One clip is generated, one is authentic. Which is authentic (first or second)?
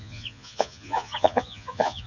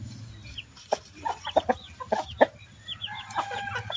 second